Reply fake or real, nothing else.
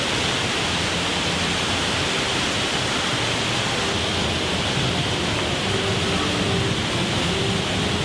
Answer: real